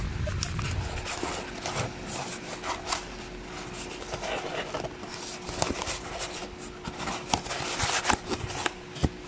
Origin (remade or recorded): recorded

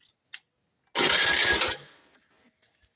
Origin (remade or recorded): recorded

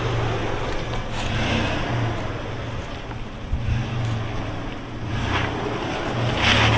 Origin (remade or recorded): recorded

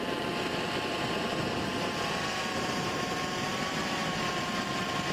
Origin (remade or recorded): remade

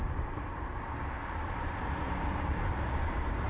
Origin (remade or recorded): remade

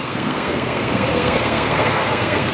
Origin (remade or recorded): remade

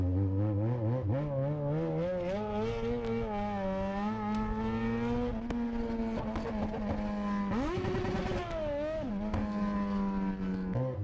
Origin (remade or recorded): recorded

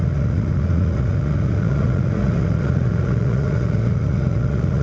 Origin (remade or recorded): remade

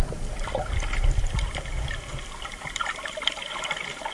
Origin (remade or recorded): recorded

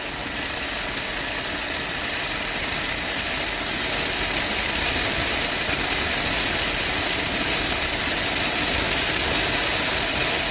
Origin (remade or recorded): recorded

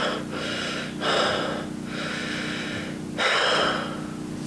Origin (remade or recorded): recorded